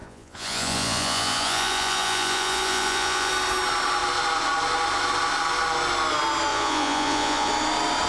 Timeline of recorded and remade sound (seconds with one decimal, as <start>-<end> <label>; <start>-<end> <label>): 0.0-3.3 remade; 3.3-6.5 recorded; 6.5-7.5 remade; 7.5-8.1 recorded